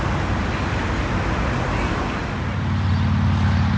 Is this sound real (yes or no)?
yes